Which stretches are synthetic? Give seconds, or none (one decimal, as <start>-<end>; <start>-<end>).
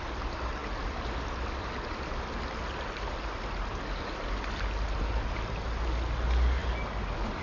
none